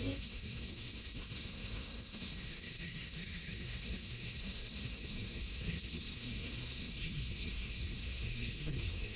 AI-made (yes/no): yes